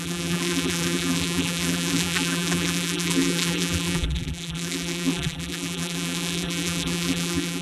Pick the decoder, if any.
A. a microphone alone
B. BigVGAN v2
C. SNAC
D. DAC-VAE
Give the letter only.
B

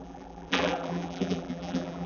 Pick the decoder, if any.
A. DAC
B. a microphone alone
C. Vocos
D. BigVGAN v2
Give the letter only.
D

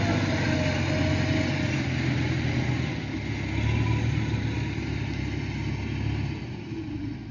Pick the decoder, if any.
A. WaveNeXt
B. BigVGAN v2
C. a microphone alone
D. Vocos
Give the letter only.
C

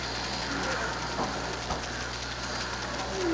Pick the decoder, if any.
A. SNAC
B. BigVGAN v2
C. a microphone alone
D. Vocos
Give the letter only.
C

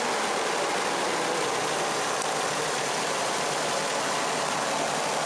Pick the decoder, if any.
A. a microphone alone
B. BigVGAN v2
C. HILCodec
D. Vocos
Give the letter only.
B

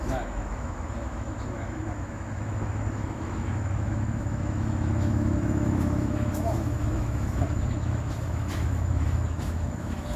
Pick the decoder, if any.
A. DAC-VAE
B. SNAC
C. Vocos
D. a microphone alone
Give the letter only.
A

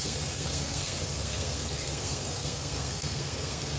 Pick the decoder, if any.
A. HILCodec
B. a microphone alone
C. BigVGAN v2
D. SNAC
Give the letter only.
D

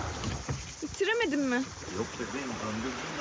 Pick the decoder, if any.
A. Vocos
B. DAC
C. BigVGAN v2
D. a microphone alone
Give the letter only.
D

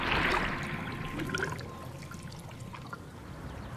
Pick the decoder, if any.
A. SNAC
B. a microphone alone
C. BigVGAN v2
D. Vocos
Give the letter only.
B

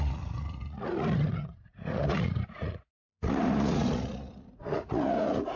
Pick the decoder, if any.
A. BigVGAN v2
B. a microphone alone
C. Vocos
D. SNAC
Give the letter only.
C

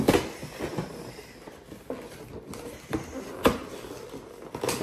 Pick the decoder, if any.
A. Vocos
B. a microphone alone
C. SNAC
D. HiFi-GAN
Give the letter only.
B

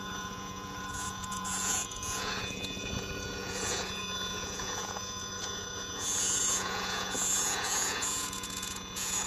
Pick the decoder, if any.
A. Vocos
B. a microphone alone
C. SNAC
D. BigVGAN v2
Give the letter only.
A